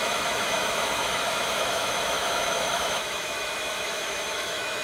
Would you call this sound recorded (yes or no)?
no